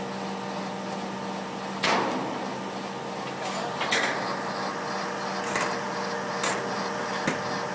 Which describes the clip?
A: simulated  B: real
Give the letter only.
B